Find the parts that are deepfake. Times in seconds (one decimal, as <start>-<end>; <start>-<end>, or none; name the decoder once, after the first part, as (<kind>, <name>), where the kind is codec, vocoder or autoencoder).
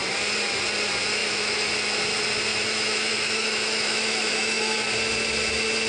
1.2-1.7 (autoencoder, DAC-VAE); 2.5-4.8